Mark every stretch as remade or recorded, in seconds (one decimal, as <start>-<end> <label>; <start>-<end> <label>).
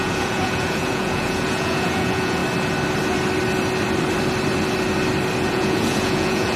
0.0-2.4 remade; 2.4-5.5 recorded; 5.5-6.6 remade